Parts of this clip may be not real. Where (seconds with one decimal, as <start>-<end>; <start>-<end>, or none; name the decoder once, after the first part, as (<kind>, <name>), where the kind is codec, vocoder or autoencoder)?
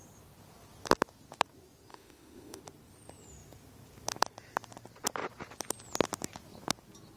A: 1.9-2.6 (autoencoder, DAC-VAE)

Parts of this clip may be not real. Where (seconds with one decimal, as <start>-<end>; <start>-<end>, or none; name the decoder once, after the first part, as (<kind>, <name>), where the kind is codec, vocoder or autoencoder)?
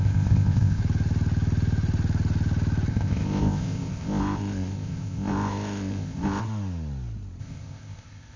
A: 0.0-0.8 (codec, ZipCodec); 2.9-6.4; 7.4-8.4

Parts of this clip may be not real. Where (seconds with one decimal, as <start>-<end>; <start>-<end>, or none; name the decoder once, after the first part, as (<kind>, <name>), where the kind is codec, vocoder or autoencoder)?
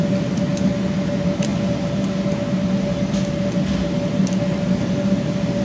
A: none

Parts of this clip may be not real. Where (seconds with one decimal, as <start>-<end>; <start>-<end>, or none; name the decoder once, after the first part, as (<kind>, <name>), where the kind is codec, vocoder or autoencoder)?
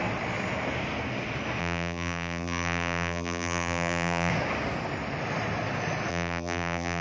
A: 1.6-4.3 (vocoder, BigVGAN v2); 6.1-7.0